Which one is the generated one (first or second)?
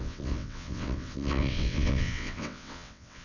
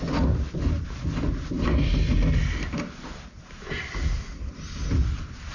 first